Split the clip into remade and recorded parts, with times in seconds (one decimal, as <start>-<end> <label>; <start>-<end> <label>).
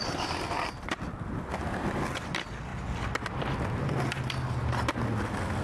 0.0-5.6 recorded